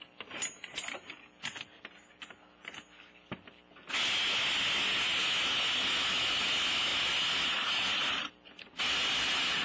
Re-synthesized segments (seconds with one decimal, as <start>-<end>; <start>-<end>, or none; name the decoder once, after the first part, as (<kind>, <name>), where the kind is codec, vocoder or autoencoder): none